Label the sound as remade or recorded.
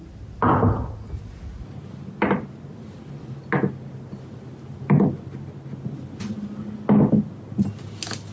recorded